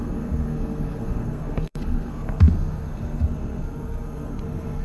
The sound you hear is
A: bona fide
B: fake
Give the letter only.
B